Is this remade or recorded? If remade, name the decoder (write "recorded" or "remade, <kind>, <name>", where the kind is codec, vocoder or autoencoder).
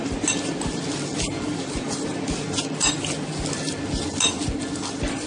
recorded